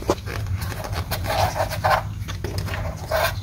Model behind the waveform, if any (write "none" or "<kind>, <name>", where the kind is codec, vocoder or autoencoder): none